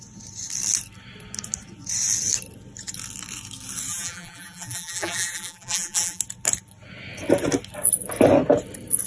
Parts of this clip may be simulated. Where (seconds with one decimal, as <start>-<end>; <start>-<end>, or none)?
3.9-6.2